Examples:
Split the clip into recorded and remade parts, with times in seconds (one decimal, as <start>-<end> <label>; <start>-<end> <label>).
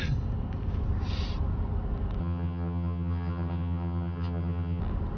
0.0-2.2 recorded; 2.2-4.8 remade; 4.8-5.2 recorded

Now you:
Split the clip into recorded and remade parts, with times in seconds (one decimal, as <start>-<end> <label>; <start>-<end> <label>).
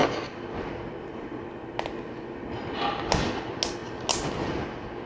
0.0-5.1 recorded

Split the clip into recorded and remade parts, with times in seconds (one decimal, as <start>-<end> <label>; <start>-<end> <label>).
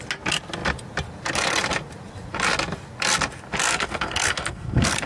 0.0-3.7 recorded; 3.7-5.1 remade